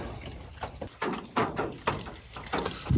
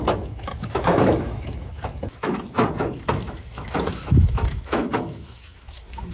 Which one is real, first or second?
first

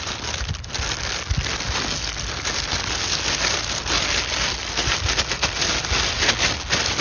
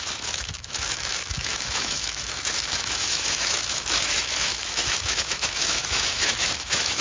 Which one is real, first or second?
first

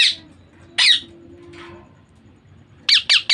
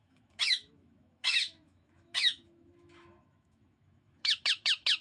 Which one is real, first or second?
first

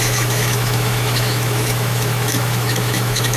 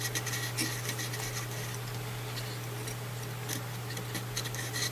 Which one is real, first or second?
second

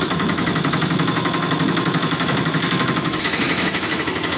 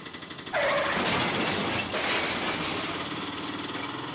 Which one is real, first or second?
second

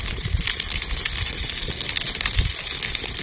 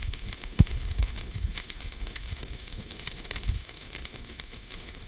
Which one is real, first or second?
first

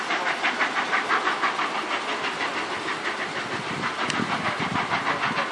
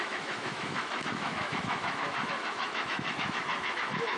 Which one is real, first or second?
first